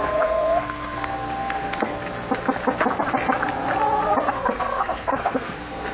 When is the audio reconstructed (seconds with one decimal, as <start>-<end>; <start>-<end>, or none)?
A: 0.0-1.9; 4.3-5.9